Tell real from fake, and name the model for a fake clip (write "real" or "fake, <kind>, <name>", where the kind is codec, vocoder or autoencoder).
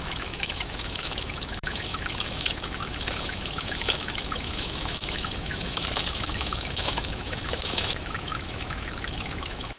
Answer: fake, autoencoder, DAC-VAE